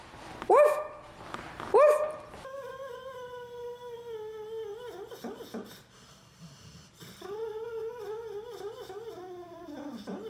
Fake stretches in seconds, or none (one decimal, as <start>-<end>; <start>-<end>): none

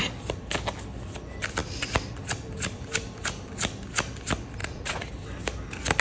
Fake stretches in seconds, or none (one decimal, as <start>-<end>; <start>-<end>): 4.6-5.1

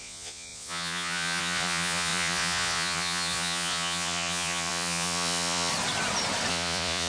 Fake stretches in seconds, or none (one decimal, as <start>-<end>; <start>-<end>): 0.0-5.7; 6.5-7.1